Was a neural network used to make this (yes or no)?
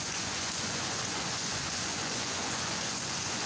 yes